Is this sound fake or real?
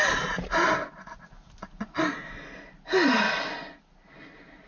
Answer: real